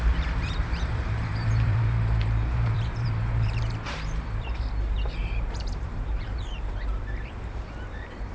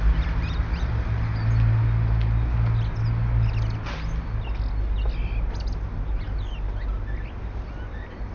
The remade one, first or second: first